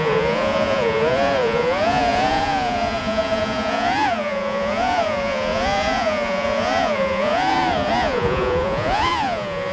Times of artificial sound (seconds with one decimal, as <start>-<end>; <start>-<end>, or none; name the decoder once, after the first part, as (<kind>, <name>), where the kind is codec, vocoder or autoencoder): 0.0-9.7 (vocoder, Vocos)